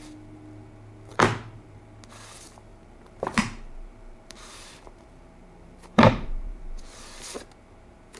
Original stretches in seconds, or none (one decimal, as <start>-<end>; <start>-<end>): 0.0-1.1; 1.8-2.7; 6.8-8.2

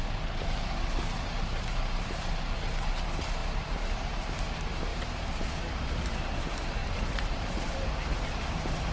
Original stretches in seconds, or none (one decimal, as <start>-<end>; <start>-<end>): 0.0-4.9; 6.2-6.8